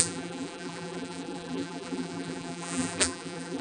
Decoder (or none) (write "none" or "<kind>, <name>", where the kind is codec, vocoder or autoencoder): vocoder, BigVGAN v2